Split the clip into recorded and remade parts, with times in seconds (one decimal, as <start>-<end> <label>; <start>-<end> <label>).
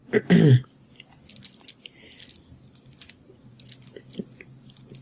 0.0-5.0 recorded